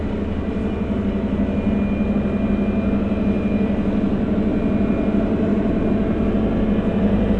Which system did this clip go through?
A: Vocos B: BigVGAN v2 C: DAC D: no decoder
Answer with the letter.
D